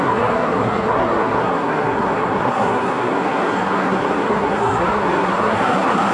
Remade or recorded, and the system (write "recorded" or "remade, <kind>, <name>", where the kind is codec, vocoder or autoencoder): remade, codec, SNAC